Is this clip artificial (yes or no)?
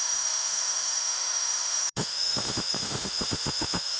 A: yes